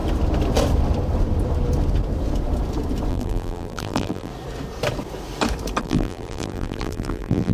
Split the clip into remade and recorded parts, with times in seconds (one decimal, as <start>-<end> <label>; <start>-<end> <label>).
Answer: 0.0-3.1 recorded; 3.1-4.3 remade; 4.3-5.8 recorded; 5.8-7.5 remade